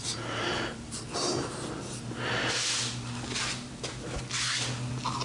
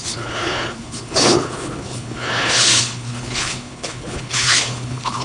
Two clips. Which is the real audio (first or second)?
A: first